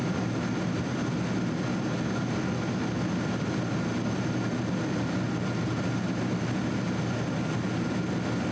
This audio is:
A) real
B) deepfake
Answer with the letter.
A